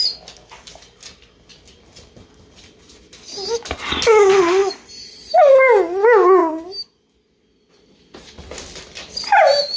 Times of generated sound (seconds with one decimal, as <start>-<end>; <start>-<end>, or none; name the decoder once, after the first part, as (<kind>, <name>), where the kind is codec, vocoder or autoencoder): none

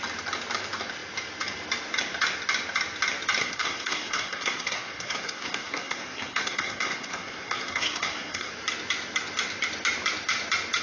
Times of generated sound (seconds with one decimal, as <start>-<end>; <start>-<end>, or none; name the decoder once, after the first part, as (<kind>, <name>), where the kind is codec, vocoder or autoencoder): 3.4-8.5 (codec, SNAC)

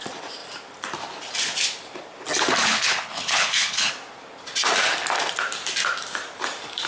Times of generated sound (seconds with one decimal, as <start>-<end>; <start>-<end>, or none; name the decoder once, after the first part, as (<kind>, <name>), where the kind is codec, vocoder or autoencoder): 2.6-3.9 (codec, HILCodec)

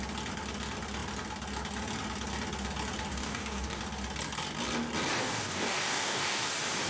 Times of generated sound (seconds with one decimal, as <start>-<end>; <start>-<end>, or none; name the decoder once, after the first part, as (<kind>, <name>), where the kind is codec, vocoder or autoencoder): 3.1-3.8 (codec, DAC); 5.2-6.5

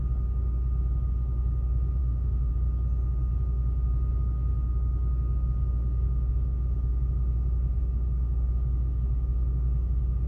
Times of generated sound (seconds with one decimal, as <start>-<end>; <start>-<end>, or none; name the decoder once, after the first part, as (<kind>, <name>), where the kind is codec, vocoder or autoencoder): 2.0-2.5 (autoencoder, DAC-VAE)

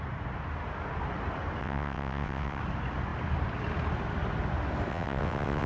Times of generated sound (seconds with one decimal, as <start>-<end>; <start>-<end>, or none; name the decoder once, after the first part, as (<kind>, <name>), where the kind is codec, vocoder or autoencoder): 1.6-2.6 (vocoder, WaveNeXt); 4.9-5.7

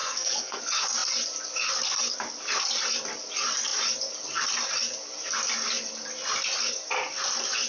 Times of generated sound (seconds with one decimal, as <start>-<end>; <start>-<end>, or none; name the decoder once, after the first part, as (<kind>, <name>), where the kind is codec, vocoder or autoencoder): 0.0-0.6 (codec, SNAC)

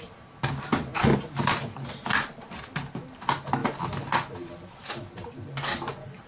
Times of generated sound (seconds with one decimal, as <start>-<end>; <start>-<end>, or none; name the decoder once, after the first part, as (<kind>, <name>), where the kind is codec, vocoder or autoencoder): none